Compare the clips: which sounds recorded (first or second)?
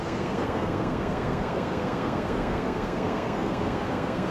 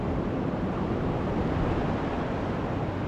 second